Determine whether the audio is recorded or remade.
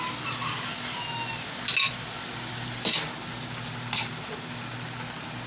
recorded